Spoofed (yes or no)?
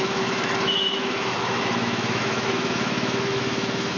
yes